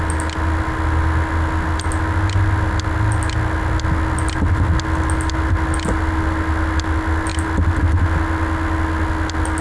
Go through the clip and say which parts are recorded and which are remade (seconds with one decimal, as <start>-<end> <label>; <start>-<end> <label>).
0.0-9.6 recorded